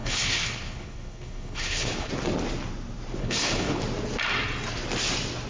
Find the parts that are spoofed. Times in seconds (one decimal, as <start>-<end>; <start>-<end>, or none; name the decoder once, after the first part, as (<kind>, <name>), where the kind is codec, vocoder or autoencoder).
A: 0.0-2.1 (codec, HILCodec); 3.2-3.8